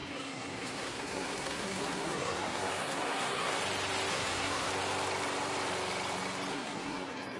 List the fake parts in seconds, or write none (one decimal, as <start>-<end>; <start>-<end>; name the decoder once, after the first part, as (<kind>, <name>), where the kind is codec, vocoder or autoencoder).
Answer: 0.0-3.6 (codec, SNAC); 4.1-4.7; 6.5-7.4